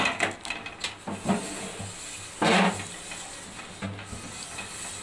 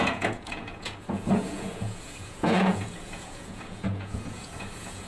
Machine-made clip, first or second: second